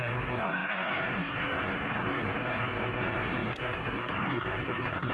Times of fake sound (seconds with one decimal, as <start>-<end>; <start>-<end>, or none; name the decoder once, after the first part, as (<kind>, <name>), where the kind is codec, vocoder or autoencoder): 0.0-5.1 (codec, SNAC)